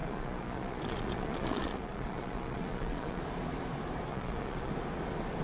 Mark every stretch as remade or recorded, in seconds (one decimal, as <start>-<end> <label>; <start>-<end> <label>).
0.0-3.2 remade; 3.2-4.1 recorded; 4.1-4.7 remade; 4.7-5.4 recorded